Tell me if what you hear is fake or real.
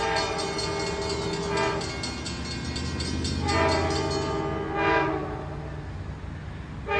real